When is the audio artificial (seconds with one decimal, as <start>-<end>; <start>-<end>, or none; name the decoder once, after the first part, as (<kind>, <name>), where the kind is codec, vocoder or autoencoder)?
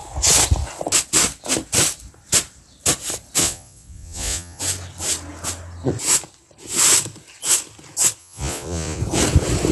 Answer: 3.4-4.6 (vocoder, Vocos); 8.2-9.0